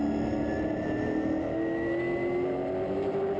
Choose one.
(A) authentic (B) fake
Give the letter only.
A